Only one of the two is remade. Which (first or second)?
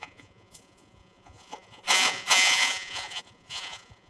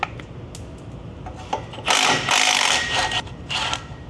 first